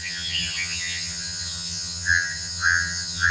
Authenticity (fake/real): fake